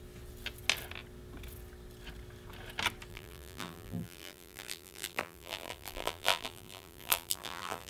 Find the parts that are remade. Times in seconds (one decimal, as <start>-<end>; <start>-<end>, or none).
3.1-7.9